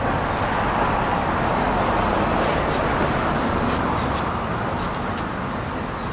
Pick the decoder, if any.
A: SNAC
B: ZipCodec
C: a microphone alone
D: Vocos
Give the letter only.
C